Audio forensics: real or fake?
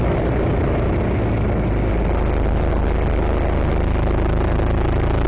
real